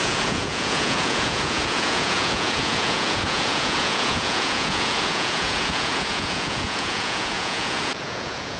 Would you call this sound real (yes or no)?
no